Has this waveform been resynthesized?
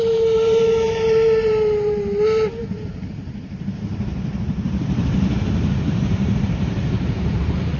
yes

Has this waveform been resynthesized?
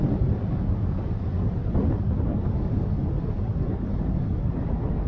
no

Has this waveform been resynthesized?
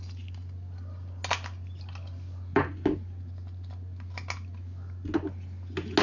no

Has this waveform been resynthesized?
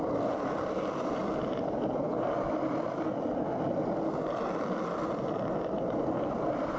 no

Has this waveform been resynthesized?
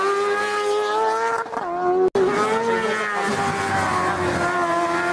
no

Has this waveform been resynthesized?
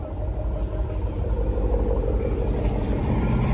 yes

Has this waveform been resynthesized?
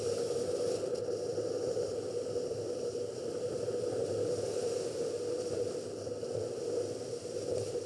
no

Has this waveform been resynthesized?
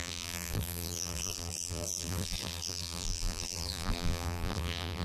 yes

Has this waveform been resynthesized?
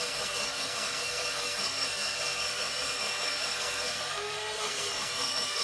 yes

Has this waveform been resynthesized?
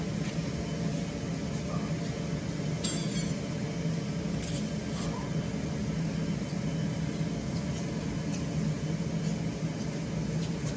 no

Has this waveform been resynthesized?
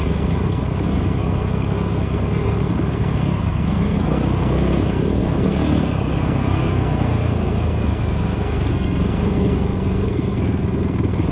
yes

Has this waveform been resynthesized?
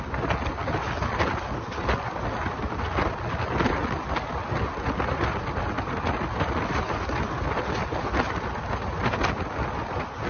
no